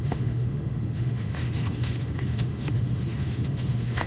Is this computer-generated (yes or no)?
yes